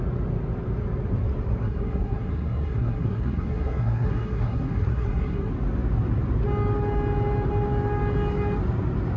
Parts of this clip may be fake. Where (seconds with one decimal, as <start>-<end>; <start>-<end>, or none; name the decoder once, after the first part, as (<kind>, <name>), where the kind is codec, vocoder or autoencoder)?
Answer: 1.6-5.5 (codec, SNAC)